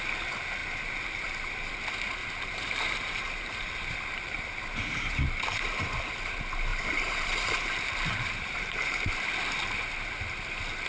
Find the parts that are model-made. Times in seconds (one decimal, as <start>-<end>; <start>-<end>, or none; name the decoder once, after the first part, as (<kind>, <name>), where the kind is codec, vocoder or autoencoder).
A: 0.6-1.7 (vocoder, BigVGAN v2); 2.2-6.1; 6.7-9.3